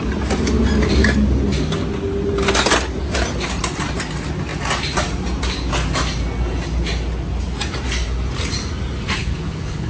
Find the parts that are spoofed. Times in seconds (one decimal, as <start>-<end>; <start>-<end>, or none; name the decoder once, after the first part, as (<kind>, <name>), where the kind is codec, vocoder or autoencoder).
9.2-9.9 (codec, HILCodec)